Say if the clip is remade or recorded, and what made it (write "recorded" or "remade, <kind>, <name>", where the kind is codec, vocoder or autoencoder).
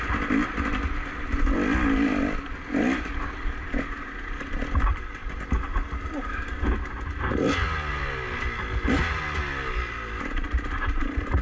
recorded